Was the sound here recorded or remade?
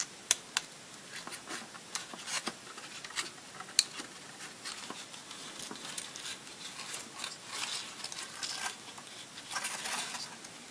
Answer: recorded